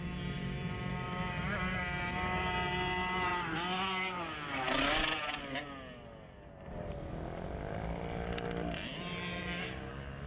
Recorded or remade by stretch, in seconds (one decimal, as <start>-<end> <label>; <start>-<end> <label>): 0.0-8.9 recorded; 8.9-9.9 remade; 9.9-10.3 recorded

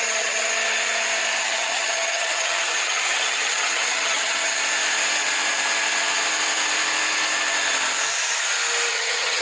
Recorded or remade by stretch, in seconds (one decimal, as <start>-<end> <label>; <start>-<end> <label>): 0.0-0.5 remade; 0.5-1.4 recorded; 1.4-4.6 remade; 4.6-8.9 recorded; 8.9-9.4 remade

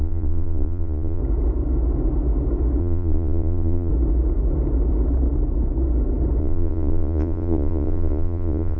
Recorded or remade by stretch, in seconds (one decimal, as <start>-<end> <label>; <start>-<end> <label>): 0.0-1.2 remade; 1.2-2.8 recorded; 2.8-3.9 remade; 3.9-6.4 recorded; 6.4-8.8 remade

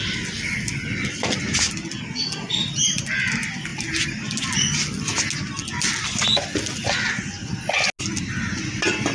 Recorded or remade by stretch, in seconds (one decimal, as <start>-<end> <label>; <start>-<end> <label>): 0.0-9.1 recorded

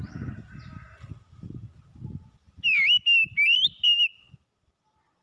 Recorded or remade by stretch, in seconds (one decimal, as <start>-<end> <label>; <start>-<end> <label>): 0.0-5.2 recorded

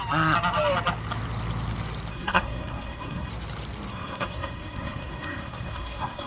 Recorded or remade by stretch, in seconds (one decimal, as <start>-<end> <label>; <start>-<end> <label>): 0.0-2.1 recorded; 2.1-3.3 remade; 3.3-3.9 recorded; 3.9-6.3 remade

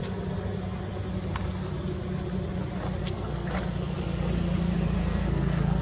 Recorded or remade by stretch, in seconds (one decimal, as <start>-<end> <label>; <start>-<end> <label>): 0.0-3.0 recorded; 3.0-3.5 remade; 3.5-5.0 recorded; 5.0-5.8 remade